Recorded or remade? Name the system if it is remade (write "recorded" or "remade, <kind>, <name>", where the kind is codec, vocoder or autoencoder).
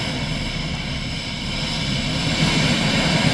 recorded